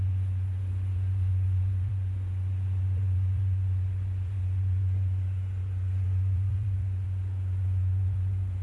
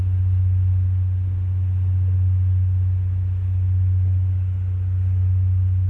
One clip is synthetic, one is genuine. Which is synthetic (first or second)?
first